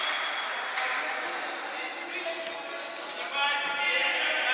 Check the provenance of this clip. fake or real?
real